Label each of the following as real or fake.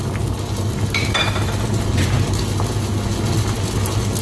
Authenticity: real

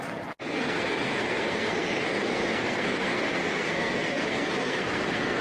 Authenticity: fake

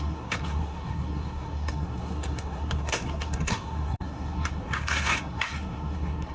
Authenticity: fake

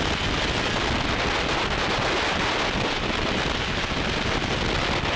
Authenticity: real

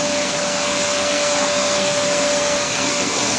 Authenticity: fake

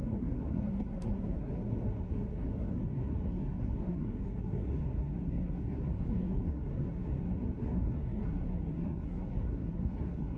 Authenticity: fake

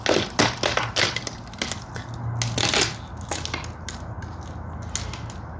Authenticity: real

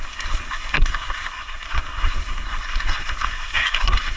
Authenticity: fake